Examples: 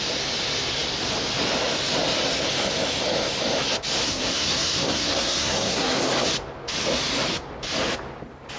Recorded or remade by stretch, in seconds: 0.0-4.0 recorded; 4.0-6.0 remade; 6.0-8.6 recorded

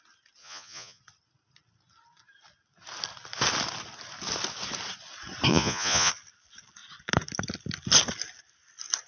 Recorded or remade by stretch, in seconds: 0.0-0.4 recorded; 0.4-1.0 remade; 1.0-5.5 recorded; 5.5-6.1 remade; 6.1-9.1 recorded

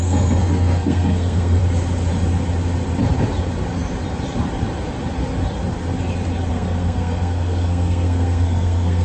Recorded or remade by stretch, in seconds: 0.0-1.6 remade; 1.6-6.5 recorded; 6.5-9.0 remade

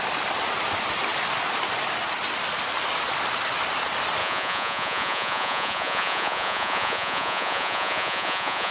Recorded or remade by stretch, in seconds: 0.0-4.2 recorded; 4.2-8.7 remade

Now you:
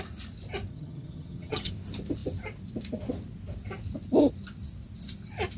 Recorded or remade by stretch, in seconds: 0.0-0.7 recorded; 0.7-1.7 remade; 1.7-5.6 recorded